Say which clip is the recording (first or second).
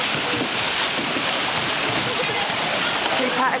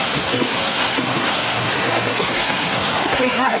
first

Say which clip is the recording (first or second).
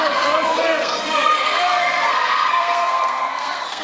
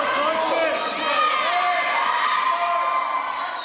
second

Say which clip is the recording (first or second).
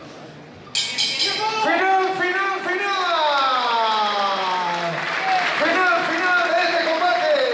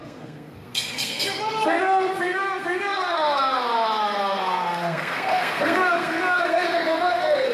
first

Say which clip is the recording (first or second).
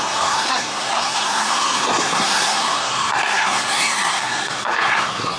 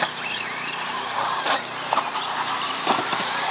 second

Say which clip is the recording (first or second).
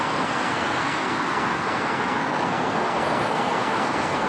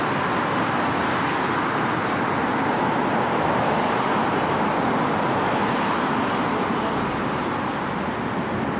second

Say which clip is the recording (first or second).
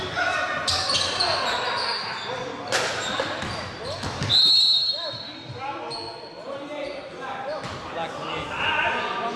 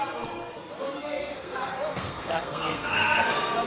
first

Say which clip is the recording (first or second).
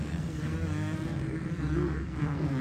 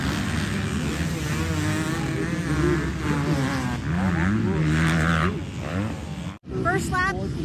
second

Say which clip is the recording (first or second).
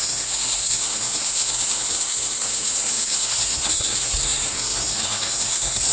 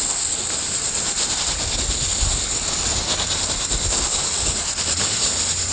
second